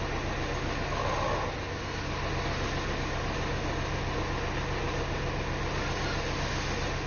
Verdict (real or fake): real